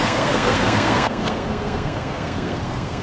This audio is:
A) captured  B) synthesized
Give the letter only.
B